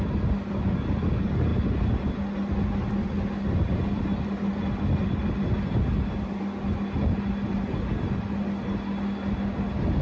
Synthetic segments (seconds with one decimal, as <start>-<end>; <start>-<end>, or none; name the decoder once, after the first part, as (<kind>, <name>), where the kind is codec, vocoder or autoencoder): none